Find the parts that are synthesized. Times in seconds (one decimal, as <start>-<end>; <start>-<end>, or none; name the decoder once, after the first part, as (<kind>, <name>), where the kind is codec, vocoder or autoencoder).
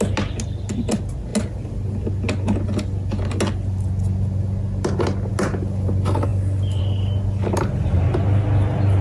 none